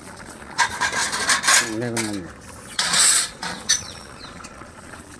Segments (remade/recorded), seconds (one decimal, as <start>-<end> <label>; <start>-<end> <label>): 0.0-1.0 remade; 1.0-2.7 recorded; 2.7-5.2 remade